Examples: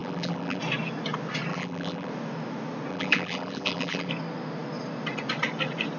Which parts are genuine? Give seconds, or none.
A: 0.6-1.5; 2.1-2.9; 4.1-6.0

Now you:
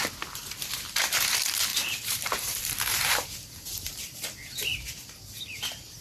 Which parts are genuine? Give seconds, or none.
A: 0.0-1.7; 4.0-6.0

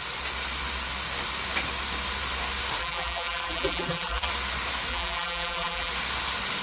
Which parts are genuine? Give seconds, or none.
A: 0.0-2.8; 4.3-4.9; 5.9-6.6

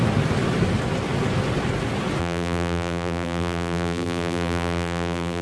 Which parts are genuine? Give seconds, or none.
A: 0.0-2.2